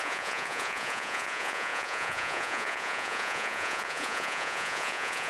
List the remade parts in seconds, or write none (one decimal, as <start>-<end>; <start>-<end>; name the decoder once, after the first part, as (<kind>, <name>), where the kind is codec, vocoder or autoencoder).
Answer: 0.0-5.3 (vocoder, Vocos)